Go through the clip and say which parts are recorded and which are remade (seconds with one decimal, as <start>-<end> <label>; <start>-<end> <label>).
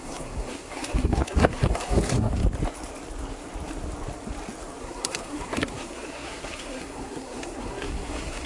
0.0-2.4 remade; 2.4-4.8 recorded; 4.8-8.5 remade